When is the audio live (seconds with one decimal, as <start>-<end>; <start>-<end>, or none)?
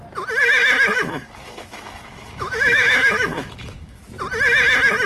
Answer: 0.0-0.9; 4.0-5.1